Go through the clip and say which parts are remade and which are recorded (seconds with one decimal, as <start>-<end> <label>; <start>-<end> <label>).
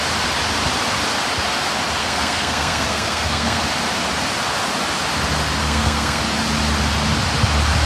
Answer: 0.0-2.0 recorded; 2.0-3.6 remade; 3.6-5.6 recorded; 5.6-6.2 remade; 6.2-7.9 recorded